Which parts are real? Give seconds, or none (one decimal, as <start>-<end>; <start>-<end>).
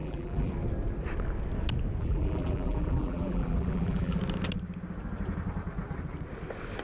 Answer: 0.5-2.0; 4.2-6.8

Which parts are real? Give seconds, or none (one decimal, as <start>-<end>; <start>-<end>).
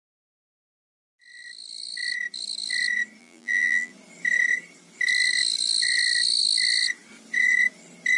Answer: 0.0-3.2; 3.9-8.2